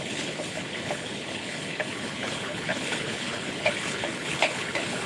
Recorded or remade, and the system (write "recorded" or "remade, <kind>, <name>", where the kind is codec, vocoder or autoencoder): remade, codec, HILCodec